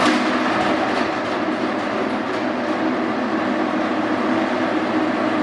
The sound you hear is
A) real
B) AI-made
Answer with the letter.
A